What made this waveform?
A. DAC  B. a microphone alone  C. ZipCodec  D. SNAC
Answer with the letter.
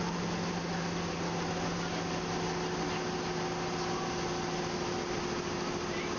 B